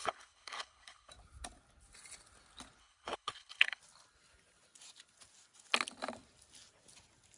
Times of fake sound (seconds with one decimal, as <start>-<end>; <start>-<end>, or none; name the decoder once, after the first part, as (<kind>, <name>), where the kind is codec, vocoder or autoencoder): 0.0-1.1 (codec, HILCodec); 2.8-3.8